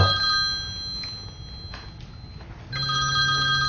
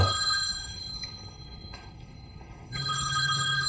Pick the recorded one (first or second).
first